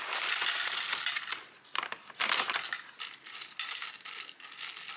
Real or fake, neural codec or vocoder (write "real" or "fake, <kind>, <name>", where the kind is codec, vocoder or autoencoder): real